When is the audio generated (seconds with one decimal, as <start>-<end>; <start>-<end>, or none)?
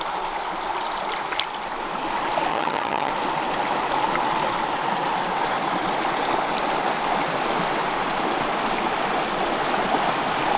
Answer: 2.5-3.1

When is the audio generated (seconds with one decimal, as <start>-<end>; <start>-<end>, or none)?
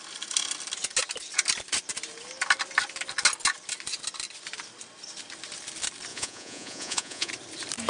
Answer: 6.1-7.3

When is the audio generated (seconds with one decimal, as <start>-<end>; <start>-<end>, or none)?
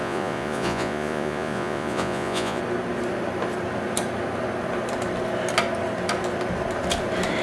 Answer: 0.0-2.6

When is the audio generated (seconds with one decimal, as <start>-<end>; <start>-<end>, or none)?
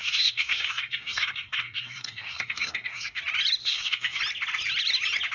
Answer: 0.0-3.2; 3.6-4.2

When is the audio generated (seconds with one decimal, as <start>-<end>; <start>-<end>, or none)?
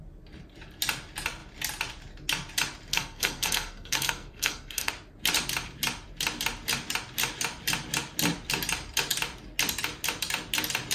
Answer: 2.9-4.9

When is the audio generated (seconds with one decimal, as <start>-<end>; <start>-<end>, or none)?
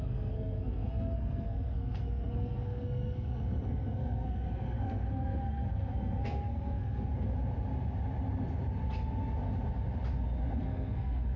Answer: 0.0-7.1; 10.6-11.4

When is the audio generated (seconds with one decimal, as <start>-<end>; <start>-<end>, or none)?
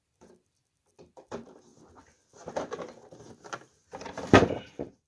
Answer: 0.0-1.7; 4.0-5.1